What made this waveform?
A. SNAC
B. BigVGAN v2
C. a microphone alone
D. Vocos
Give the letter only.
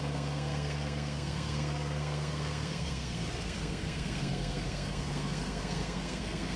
A